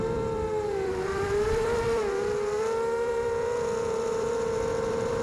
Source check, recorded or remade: remade